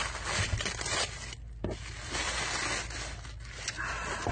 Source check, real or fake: real